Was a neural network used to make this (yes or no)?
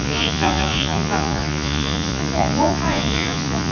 yes